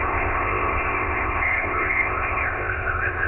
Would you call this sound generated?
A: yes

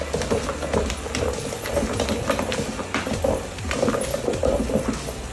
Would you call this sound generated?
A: no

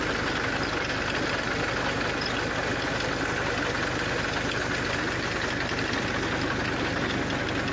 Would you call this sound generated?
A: no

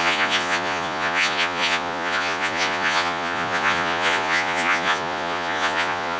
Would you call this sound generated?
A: yes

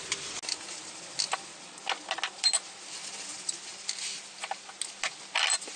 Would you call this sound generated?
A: no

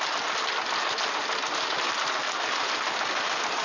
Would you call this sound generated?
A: no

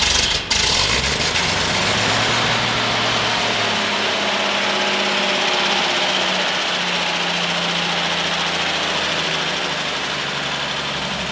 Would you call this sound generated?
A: no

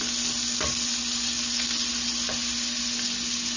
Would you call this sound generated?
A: no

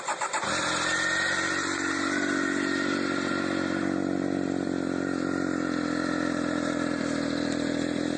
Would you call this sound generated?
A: no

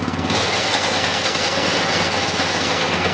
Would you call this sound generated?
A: yes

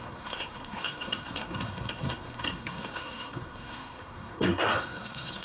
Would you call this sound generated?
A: yes